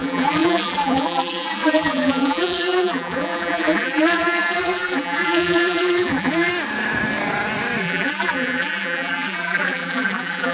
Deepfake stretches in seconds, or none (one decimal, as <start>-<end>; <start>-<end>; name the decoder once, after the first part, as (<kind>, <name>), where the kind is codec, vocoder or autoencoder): 0.0-6.5 (vocoder, BigVGAN v2); 7.8-10.5